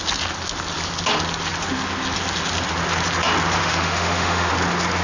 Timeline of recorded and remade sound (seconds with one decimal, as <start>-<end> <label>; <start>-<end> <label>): 0.0-3.6 recorded; 3.6-4.5 remade; 4.5-5.0 recorded